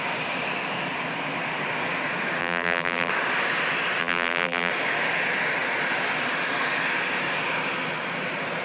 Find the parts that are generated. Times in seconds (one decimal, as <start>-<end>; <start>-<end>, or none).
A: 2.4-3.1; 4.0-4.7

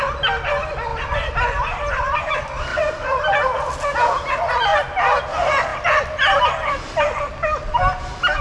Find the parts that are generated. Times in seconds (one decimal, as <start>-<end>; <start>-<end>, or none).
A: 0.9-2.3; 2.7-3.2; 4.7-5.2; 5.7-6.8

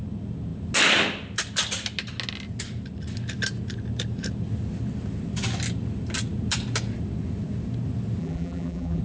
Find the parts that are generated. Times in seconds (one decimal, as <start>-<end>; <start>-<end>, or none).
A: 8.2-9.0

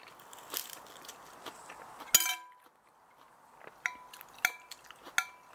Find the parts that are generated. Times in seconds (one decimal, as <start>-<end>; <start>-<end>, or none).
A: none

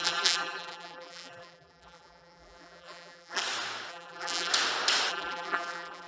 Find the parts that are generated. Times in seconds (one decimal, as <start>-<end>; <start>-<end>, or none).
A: 0.0-3.4; 3.9-4.5; 5.1-6.1

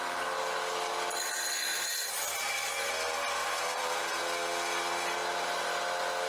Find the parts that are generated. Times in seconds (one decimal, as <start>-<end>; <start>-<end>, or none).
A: 1.7-2.9; 3.4-4.2

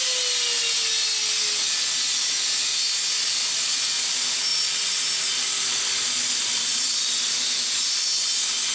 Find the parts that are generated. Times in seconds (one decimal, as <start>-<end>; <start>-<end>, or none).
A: 4.5-7.3

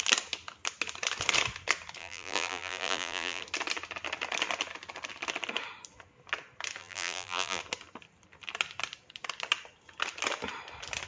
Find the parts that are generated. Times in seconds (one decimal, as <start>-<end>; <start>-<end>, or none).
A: 2.0-3.4; 6.8-7.6